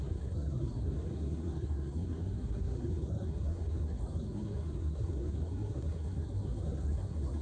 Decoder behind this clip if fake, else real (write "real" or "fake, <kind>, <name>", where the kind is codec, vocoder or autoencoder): fake, codec, SNAC